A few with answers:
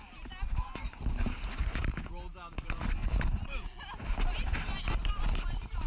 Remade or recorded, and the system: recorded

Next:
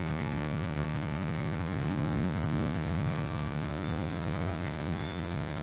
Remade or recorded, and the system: remade, vocoder, Vocos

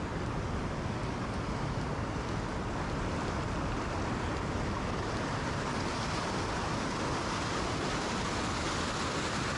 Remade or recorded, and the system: recorded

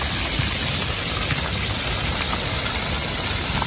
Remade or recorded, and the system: recorded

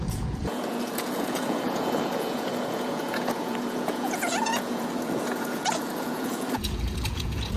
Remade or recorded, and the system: remade, vocoder, Vocos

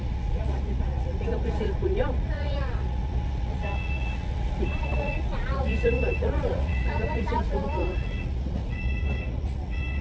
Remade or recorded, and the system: remade, vocoder, Vocos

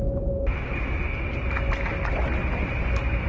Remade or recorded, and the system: recorded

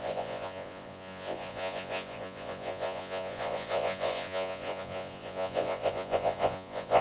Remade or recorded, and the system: remade, vocoder, Vocos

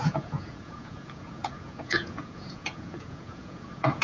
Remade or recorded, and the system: remade, vocoder, Vocos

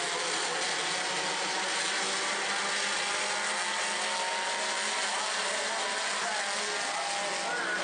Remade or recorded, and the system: recorded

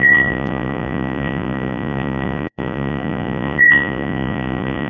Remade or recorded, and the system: remade, vocoder, Vocos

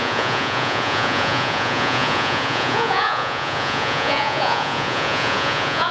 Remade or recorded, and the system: remade, vocoder, Vocos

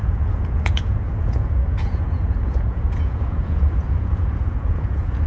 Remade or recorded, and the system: remade, vocoder, Vocos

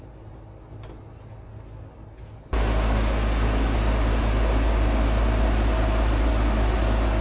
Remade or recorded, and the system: recorded